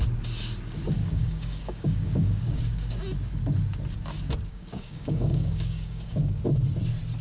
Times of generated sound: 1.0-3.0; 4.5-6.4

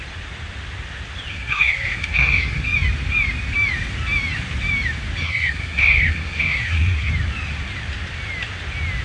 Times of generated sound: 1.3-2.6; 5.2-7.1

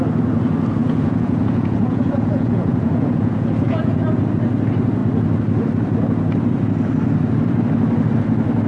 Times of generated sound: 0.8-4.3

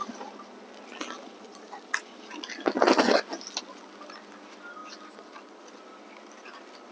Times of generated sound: none